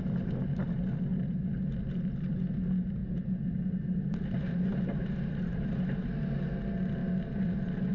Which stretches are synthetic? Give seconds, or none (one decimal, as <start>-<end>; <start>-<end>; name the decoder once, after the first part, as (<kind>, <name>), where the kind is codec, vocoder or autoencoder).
none